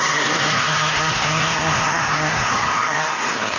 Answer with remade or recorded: remade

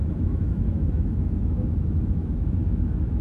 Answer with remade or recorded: remade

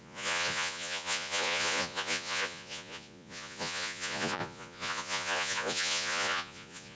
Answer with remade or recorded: remade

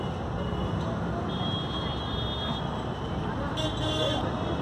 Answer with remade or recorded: recorded